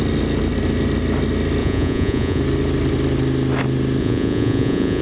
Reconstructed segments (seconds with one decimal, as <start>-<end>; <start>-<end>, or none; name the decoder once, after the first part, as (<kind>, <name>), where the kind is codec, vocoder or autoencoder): 1.6-2.4 (vocoder, Vocos); 4.0-5.0

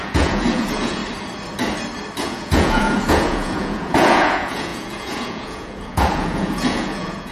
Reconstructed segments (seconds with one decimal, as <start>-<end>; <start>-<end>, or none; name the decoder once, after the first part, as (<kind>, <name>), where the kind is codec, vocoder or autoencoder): 0.0-1.0 (vocoder, Vocos); 2.2-7.3

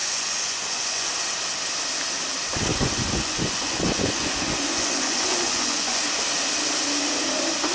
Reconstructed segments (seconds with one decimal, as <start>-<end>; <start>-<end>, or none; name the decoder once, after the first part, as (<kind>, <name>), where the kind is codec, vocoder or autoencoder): 0.0-1.1 (vocoder, Vocos); 2.7-6.0

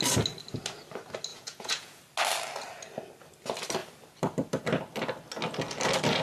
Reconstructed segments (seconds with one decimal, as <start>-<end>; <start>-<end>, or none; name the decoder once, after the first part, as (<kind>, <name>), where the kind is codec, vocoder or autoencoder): 1.3-2.0 (vocoder, Vocos)

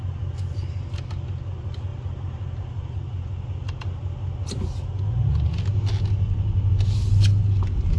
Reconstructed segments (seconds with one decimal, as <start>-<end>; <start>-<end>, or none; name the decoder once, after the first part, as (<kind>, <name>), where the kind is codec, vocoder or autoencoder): none

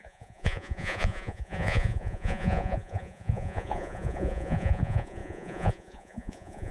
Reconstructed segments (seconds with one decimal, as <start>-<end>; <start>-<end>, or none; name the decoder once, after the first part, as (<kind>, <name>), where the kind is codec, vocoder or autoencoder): 0.0-6.7 (vocoder, Vocos)

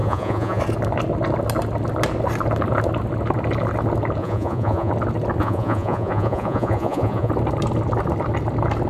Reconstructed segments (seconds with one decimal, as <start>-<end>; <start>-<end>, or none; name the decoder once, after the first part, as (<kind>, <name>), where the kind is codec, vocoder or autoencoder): 0.0-0.6 (vocoder, Vocos); 4.2-4.9; 5.4-7.3

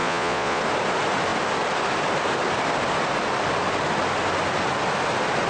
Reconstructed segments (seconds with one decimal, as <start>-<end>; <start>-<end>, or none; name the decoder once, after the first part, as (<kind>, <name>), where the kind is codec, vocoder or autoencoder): 0.0-0.6 (vocoder, Vocos)